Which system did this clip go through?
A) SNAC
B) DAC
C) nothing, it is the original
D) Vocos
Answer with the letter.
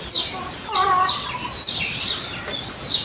C